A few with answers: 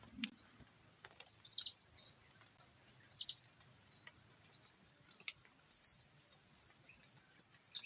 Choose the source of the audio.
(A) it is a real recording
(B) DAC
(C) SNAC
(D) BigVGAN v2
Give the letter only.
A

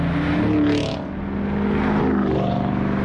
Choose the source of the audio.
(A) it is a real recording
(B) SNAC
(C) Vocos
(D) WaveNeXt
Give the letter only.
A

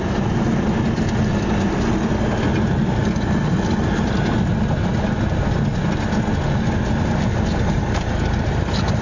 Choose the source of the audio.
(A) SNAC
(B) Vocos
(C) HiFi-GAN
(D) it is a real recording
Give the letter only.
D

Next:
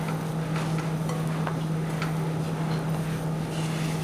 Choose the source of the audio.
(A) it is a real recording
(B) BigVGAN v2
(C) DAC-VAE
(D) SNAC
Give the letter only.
A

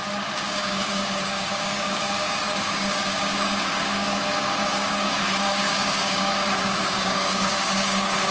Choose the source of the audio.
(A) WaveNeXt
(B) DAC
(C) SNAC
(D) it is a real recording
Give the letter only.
B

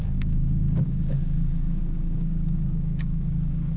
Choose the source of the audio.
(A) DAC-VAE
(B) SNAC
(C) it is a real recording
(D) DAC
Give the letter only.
D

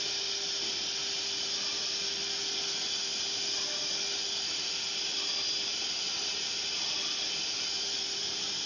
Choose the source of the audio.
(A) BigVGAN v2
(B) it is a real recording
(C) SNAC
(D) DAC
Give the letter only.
B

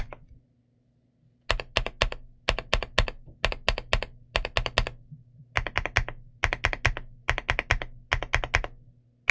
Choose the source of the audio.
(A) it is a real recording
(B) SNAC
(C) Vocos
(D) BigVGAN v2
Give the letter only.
A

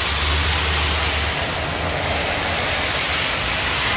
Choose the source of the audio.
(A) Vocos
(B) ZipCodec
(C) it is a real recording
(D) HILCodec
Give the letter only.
C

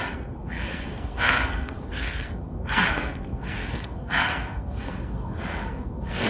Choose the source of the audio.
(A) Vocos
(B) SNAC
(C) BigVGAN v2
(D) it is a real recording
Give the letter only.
B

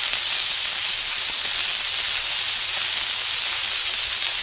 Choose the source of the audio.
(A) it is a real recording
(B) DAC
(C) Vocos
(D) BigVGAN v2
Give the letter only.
A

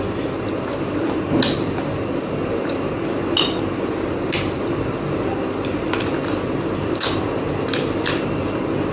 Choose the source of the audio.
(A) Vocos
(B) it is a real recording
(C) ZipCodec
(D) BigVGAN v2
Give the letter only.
B